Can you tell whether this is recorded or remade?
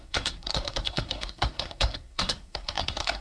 remade